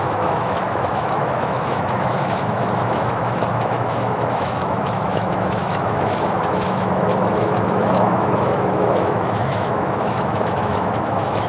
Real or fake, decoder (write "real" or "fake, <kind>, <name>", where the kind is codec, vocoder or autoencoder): fake, autoencoder, DAC-VAE